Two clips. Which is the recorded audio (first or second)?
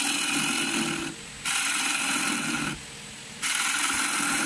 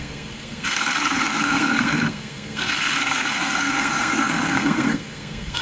first